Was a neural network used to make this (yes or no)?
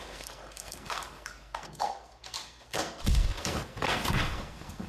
yes